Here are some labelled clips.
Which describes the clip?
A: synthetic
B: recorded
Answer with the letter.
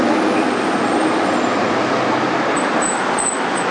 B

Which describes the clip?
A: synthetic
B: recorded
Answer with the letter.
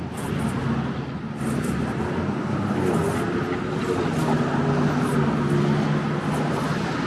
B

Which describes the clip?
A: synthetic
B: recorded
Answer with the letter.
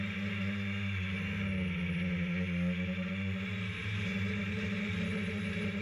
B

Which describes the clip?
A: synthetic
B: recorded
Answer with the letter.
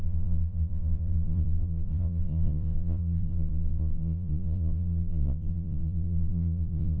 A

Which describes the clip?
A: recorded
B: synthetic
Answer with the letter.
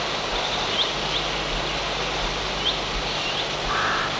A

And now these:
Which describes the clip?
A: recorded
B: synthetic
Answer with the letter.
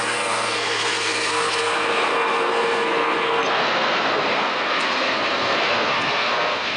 B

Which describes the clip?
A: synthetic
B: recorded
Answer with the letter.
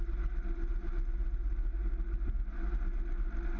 B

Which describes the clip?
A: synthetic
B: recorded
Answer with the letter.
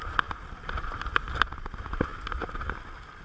B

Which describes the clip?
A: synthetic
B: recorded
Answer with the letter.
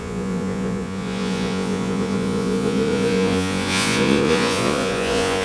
A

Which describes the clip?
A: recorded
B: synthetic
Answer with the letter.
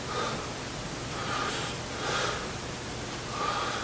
A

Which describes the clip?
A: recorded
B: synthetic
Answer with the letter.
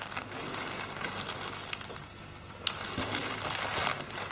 A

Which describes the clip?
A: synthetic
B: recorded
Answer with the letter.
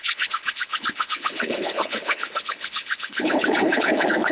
A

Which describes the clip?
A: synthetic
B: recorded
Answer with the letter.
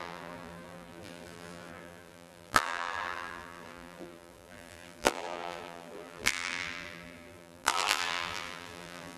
A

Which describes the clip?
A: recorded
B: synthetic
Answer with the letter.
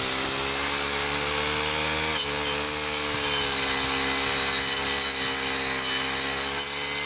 A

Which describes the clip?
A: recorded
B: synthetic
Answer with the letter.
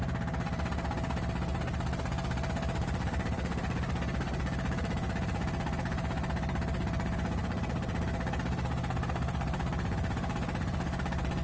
A